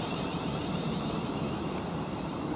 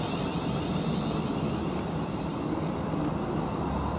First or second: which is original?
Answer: second